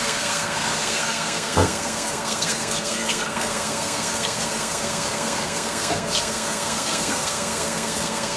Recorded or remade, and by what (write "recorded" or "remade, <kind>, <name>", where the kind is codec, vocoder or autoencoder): remade, codec, SNAC